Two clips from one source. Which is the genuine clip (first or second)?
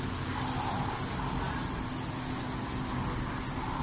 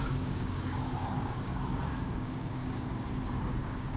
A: first